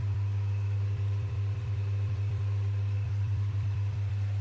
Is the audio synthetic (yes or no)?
yes